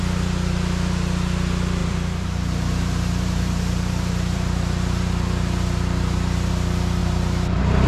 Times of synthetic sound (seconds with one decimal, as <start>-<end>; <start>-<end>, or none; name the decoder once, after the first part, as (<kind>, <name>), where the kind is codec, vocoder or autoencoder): 1.8-6.5 (vocoder, BigVGAN v2); 7.0-7.9